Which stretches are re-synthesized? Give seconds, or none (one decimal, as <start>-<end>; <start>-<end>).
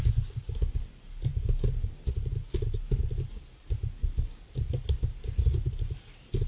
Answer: none